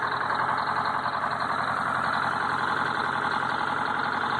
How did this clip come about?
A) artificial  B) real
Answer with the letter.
B